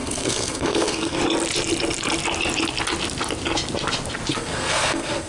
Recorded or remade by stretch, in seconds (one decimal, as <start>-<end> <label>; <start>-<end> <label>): 0.0-1.2 remade; 1.2-4.3 recorded; 4.3-5.3 remade